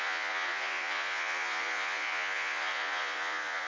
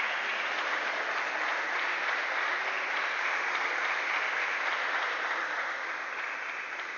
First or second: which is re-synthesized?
first